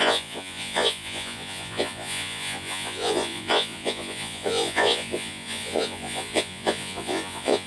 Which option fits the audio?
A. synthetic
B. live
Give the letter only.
A